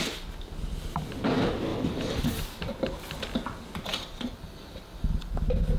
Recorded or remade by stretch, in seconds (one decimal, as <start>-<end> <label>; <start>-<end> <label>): 0.0-1.7 recorded; 1.7-2.4 remade; 2.4-3.9 recorded; 3.9-5.3 remade; 5.3-5.8 recorded